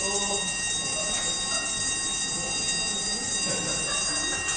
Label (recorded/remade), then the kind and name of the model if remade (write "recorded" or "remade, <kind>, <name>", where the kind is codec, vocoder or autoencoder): recorded